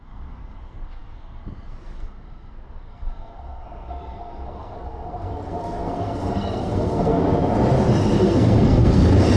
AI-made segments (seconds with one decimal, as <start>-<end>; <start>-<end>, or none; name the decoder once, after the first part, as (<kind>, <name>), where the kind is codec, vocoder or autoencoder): 0.0-7.2 (codec, SNAC); 8.2-9.4